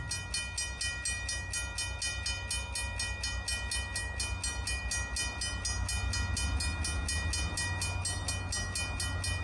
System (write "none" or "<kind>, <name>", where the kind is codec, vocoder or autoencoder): none